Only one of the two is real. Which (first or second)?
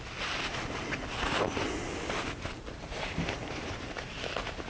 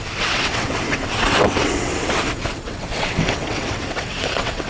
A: first